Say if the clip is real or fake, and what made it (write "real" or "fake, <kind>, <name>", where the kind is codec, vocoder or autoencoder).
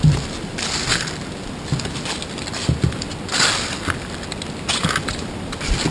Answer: real